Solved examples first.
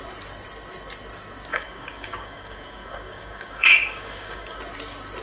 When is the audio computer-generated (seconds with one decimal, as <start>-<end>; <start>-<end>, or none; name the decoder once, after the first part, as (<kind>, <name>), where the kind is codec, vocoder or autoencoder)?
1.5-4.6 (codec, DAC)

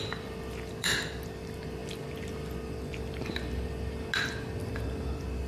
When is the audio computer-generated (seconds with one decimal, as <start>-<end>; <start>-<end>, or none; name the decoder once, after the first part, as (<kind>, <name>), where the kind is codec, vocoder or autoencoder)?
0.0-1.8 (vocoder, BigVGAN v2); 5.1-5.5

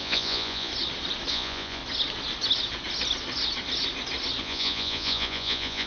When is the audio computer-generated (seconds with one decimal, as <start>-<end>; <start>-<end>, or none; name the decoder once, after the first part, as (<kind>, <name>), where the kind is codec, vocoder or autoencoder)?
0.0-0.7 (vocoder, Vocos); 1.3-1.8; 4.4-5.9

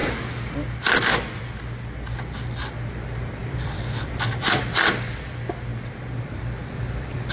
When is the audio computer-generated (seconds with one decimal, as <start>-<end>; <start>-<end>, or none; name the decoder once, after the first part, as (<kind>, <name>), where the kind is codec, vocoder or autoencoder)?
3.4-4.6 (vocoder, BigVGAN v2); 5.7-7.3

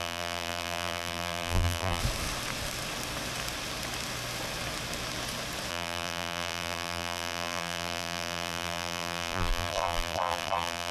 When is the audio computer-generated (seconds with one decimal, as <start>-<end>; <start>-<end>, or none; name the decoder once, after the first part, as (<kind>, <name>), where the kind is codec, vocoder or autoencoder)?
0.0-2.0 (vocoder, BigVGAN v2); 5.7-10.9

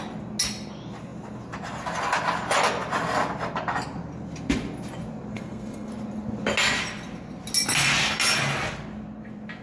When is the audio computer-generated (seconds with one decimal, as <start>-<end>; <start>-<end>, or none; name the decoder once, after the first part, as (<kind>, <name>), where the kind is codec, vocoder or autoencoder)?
5.3-5.9 (codec, SNAC)